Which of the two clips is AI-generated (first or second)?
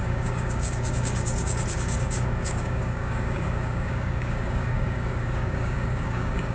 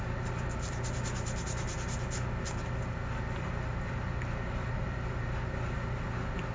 first